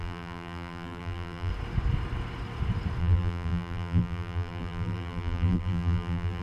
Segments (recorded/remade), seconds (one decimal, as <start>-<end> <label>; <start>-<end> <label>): 0.0-1.5 remade; 1.5-3.0 recorded; 3.0-6.4 remade